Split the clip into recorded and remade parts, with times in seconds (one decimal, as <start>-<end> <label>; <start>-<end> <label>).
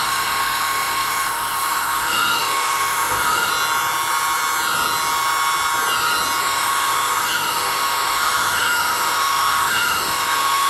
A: 0.0-3.5 remade; 3.5-6.4 recorded; 6.4-10.7 remade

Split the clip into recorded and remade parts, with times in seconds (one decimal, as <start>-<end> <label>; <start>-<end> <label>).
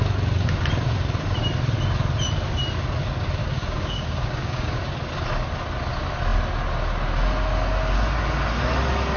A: 0.0-3.4 recorded; 3.4-4.8 remade; 4.8-9.2 recorded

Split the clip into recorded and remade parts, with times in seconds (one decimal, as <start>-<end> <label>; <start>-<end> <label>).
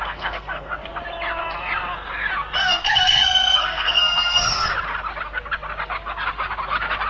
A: 0.0-0.7 remade; 0.7-2.6 recorded; 2.6-4.7 remade; 4.7-7.1 recorded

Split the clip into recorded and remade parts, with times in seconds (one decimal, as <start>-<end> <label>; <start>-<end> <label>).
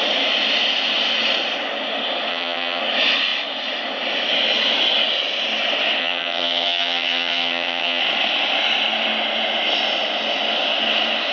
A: 0.0-2.3 recorded; 2.3-2.8 remade; 2.8-6.0 recorded; 6.0-8.0 remade; 8.0-11.3 recorded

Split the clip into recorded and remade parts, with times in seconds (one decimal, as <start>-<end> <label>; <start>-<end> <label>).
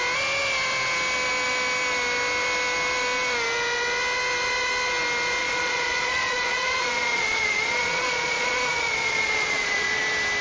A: 0.0-5.4 recorded; 5.4-10.0 remade; 10.0-10.4 recorded